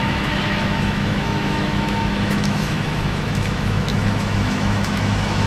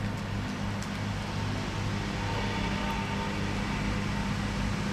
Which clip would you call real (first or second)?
second